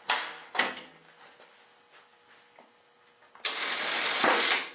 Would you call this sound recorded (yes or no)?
yes